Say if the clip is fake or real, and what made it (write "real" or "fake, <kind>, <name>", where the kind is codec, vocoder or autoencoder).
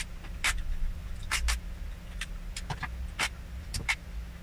real